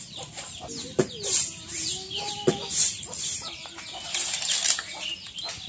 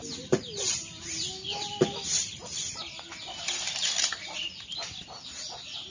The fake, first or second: second